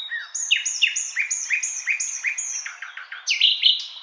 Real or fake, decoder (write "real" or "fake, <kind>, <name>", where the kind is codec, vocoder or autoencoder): real